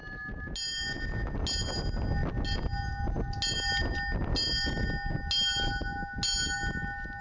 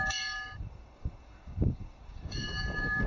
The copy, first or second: second